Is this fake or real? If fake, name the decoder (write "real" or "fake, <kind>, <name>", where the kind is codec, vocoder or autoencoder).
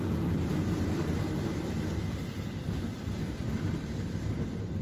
real